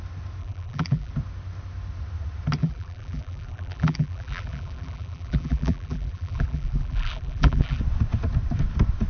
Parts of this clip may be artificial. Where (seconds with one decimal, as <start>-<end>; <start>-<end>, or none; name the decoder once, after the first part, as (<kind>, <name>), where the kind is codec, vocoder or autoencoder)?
0.4-1.1 (vocoder, BigVGAN v2); 2.6-7.8